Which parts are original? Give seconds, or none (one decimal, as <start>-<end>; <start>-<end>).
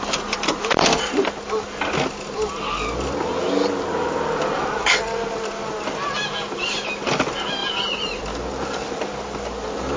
0.0-10.0